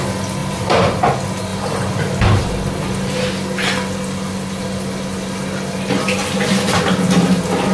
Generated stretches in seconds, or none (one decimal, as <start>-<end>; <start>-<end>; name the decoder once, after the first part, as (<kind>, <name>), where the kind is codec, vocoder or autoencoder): 0.4-1.0 (vocoder, BigVGAN v2); 1.5-2.4